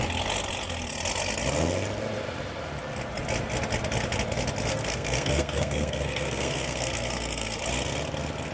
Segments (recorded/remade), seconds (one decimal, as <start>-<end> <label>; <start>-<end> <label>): 0.0-4.7 recorded; 4.7-7.6 remade; 7.6-8.5 recorded